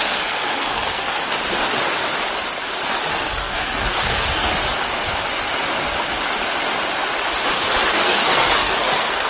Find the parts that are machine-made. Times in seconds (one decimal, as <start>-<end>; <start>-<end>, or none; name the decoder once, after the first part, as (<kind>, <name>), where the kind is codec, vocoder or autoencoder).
0.0-1.3 (codec, SNAC); 3.1-4.5; 7.9-9.3